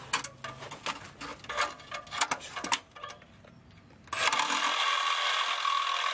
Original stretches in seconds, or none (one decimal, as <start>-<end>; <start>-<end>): 0.0-6.1